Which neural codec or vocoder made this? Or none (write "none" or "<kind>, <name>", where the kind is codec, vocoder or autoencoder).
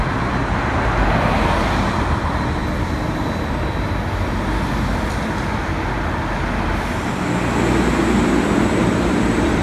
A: none